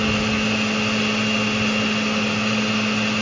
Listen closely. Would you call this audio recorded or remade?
recorded